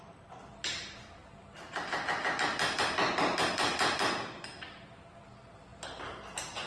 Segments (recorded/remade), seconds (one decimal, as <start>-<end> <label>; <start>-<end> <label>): 0.0-1.2 remade; 1.2-5.2 recorded; 5.2-5.7 remade; 5.7-6.7 recorded